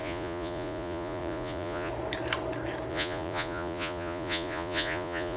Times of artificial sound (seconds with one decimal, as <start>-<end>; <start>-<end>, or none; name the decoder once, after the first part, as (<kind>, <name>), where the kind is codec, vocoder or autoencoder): 0.0-1.9 (vocoder, Vocos); 2.9-5.4